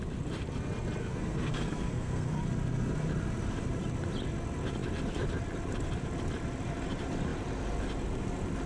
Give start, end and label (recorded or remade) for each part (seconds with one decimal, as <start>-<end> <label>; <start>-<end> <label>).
0.0-1.0 recorded; 1.0-2.4 remade; 2.4-8.7 recorded